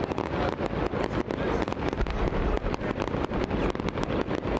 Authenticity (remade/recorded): recorded